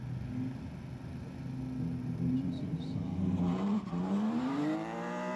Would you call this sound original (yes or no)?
yes